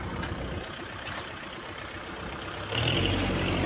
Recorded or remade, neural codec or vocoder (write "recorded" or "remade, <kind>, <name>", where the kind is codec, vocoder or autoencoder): remade, vocoder, BigVGAN v2